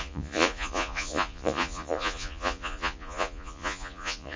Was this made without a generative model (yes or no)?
no